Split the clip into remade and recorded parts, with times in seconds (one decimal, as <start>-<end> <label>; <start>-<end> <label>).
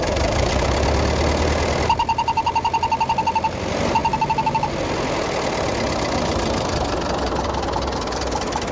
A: 0.0-8.7 recorded